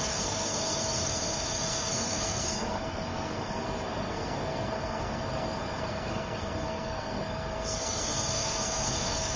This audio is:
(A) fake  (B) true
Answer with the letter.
A